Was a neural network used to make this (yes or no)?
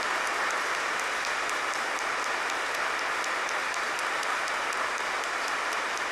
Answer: no